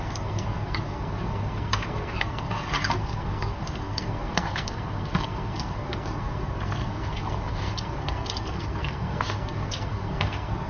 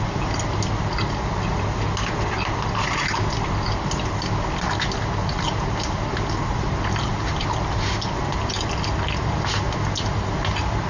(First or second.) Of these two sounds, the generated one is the first